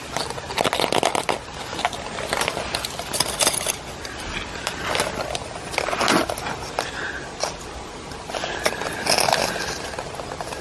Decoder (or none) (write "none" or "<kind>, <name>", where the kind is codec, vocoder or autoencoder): none